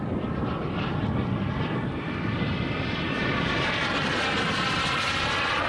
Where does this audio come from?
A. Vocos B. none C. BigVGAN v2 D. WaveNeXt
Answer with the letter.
B